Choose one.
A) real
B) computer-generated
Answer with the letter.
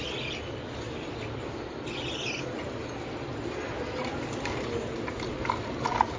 A